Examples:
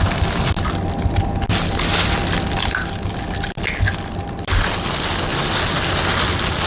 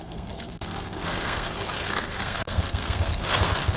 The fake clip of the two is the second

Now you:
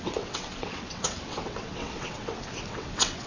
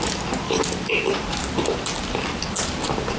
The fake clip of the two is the first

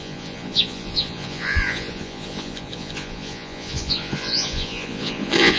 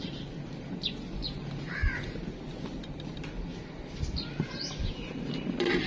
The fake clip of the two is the first